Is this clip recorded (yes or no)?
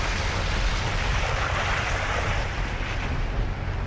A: yes